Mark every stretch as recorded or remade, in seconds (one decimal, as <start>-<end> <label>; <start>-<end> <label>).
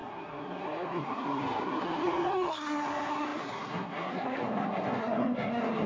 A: 0.0-5.9 remade